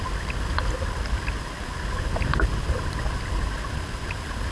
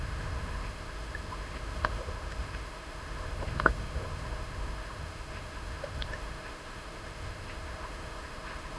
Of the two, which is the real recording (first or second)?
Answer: first